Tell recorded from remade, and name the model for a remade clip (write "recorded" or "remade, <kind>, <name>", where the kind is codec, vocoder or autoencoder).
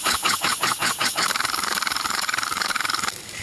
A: remade, codec, DAC